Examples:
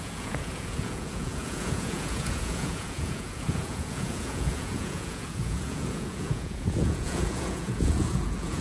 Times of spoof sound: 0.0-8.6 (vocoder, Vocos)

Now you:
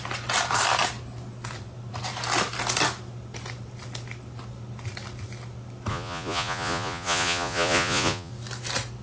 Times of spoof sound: 5.9-8.3 (vocoder, Vocos)

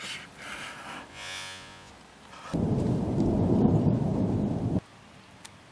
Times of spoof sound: 1.1-1.9 (vocoder, Vocos)

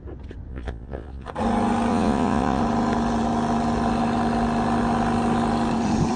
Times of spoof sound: 0.5-1.3 (vocoder, Vocos); 1.9-2.6

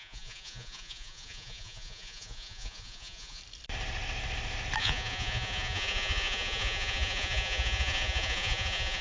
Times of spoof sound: 0.0-3.4 (vocoder, Vocos); 4.8-9.0

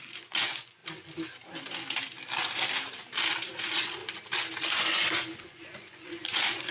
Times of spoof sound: 0.0-0.8 (vocoder, Vocos); 3.6-4.0; 4.7-6.7